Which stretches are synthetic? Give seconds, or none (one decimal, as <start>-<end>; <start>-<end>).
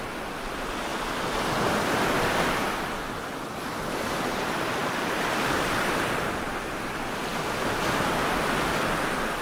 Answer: 4.8-6.4